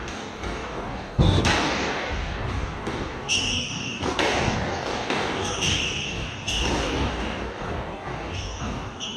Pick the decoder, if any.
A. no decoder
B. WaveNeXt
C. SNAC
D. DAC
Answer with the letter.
D